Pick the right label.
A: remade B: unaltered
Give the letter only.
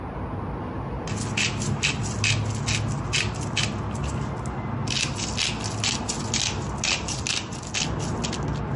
B